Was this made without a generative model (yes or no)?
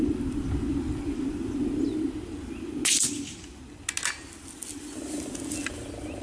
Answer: yes